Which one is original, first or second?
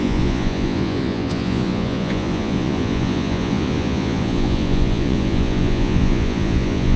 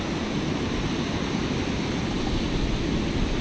second